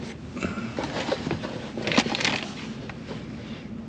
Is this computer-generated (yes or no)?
no